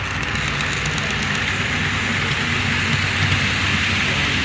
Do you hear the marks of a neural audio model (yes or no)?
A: no